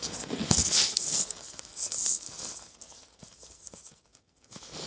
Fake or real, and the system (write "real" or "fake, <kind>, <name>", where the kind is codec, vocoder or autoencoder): fake, codec, SNAC